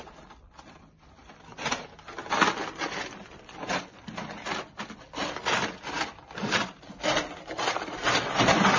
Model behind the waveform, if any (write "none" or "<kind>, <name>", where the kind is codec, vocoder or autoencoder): none